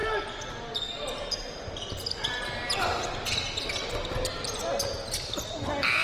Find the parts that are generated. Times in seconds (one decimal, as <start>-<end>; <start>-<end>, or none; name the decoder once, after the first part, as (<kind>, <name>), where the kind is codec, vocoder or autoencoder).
none